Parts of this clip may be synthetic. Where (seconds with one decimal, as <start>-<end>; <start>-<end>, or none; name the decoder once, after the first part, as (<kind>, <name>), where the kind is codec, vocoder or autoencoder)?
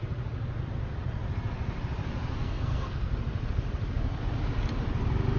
2.4-3.1 (codec, SNAC)